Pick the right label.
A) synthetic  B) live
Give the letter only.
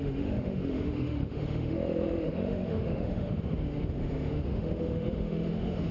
A